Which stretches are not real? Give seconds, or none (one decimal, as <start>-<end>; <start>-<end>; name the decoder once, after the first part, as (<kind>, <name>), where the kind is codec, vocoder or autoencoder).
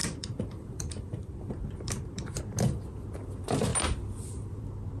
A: 0.0-2.4 (vocoder, BigVGAN v2)